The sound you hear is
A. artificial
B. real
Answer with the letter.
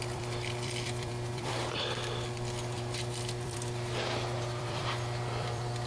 A